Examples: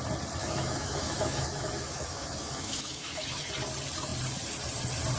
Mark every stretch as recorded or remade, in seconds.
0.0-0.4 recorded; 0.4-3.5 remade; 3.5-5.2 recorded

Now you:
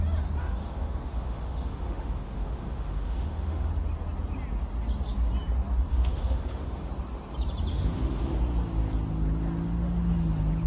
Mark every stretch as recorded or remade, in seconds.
0.0-0.4 recorded; 0.4-3.7 remade; 3.7-5.9 recorded; 5.9-6.9 remade; 6.9-7.7 recorded; 7.7-8.4 remade; 8.4-10.7 recorded

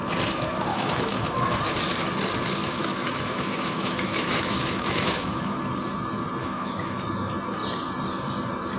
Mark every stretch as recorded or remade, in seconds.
0.0-0.7 recorded; 0.7-1.6 remade; 1.6-2.6 recorded; 2.6-5.6 remade; 5.6-6.4 recorded; 6.4-7.0 remade; 7.0-8.8 recorded

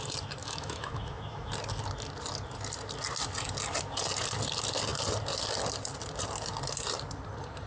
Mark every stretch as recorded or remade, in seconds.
0.0-0.4 recorded; 0.4-1.5 remade; 1.5-7.7 recorded

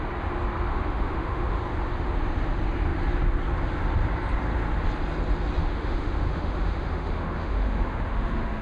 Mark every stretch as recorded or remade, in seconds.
0.0-0.7 recorded; 0.7-1.6 remade; 1.6-5.6 recorded; 5.6-8.6 remade